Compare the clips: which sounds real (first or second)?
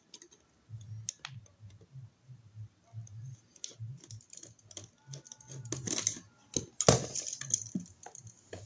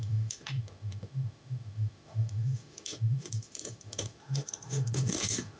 first